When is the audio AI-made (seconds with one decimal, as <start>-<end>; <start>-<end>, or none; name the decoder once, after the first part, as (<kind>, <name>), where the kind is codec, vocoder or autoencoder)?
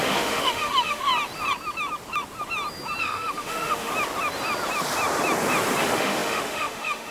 0.0-1.1 (autoencoder, DAC-VAE); 3.0-3.9; 5.8-7.1